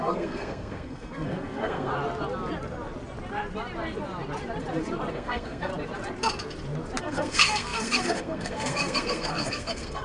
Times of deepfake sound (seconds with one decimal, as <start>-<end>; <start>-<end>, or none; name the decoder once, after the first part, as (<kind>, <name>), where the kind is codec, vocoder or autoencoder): 0.0-1.9 (codec, SNAC); 5.1-5.7; 7.0-10.0